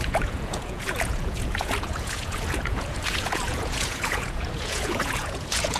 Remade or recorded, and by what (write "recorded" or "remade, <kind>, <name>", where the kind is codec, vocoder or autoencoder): remade, vocoder, Vocos